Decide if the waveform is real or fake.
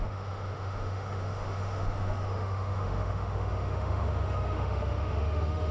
fake